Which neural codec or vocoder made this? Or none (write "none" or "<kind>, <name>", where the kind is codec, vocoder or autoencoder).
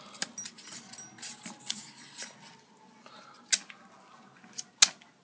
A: none